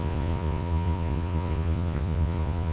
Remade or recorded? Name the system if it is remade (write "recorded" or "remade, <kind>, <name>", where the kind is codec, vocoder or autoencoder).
remade, vocoder, Vocos